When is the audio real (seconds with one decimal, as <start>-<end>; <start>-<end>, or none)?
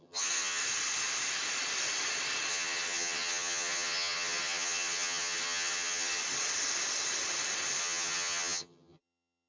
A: 0.6-2.5; 6.2-7.8